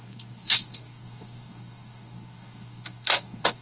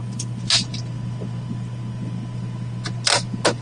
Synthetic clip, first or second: first